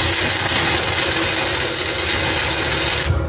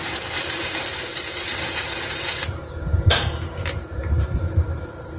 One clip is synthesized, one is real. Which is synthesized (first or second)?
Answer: second